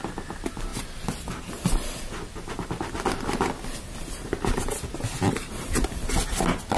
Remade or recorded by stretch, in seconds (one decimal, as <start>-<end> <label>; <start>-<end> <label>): 0.0-6.8 recorded